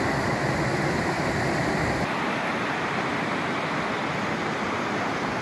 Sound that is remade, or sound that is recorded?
recorded